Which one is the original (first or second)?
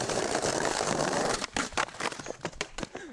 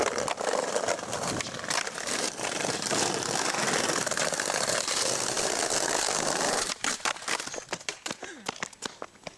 second